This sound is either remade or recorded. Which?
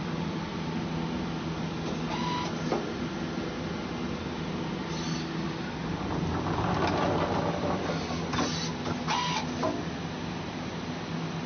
recorded